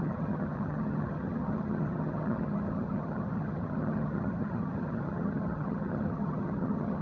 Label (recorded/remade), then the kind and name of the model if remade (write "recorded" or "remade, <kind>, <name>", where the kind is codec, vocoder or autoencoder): remade, vocoder, HiFi-GAN